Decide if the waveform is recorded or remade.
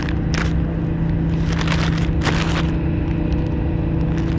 recorded